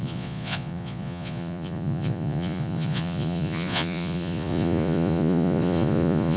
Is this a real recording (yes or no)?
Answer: no